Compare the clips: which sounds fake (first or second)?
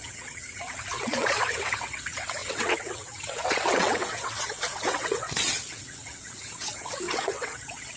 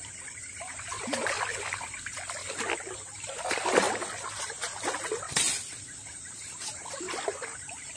first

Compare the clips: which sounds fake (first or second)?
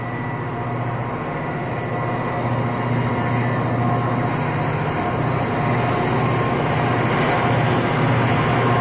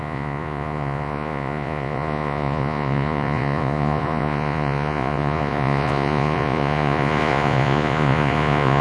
second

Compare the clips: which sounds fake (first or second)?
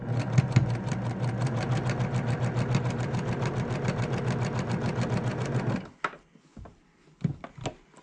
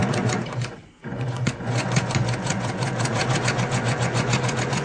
second